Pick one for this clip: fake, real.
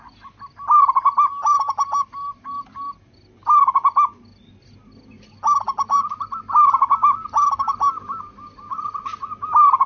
real